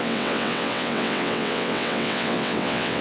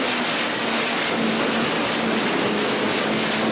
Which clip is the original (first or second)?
second